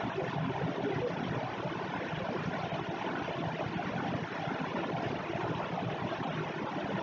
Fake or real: real